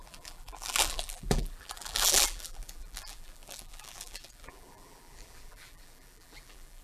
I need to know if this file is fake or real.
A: fake